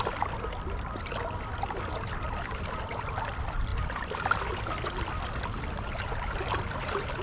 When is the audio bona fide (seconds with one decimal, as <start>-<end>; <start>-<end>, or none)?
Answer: 0.0-7.2